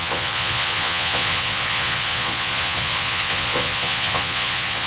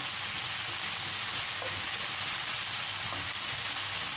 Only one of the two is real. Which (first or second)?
second